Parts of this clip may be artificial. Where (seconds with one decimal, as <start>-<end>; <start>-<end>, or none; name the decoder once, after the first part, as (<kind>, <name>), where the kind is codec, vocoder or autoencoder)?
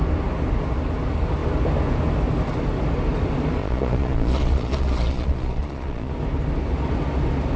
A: 3.6-6.1 (vocoder, Vocos)